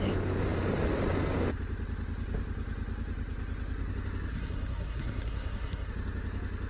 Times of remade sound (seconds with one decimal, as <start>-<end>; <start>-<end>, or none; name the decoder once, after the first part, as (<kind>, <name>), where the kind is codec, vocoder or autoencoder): 4.3-5.9 (codec, SNAC)